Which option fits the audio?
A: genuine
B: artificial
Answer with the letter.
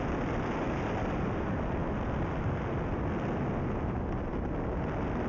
A